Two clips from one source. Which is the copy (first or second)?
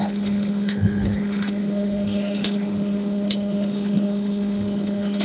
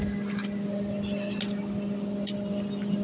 first